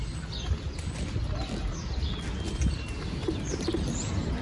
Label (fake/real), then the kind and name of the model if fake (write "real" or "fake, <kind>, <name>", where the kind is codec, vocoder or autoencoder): real